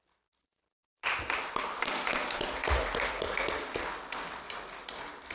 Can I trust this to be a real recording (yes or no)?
no